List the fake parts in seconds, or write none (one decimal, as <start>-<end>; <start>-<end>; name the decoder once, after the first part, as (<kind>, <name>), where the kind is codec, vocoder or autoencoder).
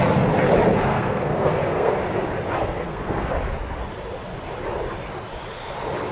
0.9-1.9 (codec, SNAC); 2.6-3.3